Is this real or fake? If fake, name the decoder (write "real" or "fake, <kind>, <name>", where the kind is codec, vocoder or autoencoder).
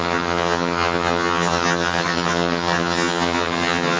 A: fake, vocoder, HiFi-GAN